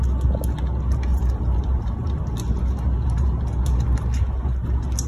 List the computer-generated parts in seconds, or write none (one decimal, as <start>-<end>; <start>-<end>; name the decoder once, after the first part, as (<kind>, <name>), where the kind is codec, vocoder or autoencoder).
1.1-2.2 (vocoder, BigVGAN v2)